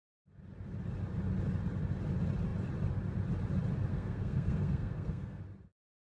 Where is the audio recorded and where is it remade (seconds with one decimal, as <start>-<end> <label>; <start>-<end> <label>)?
0.0-3.9 recorded; 3.9-5.4 remade; 5.4-6.0 recorded